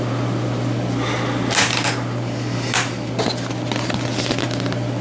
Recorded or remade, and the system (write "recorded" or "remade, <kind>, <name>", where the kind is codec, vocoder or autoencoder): recorded